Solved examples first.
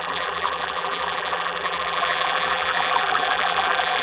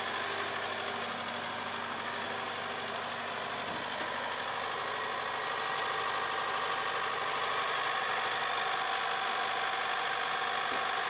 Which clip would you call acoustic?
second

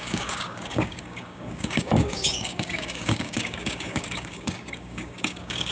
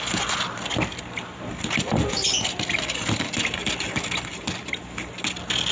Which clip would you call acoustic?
second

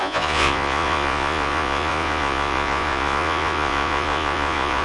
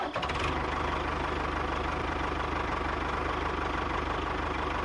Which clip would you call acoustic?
second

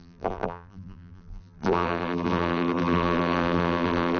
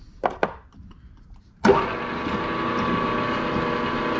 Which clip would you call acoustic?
second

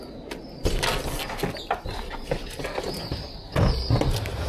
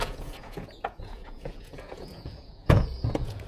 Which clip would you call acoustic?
first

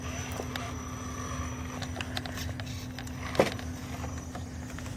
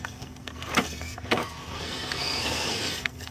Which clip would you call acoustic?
first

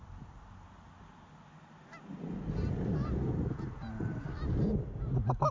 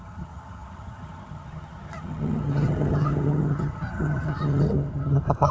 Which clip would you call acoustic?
first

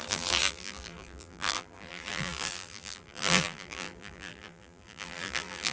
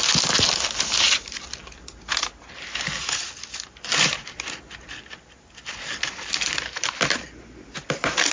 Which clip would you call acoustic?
second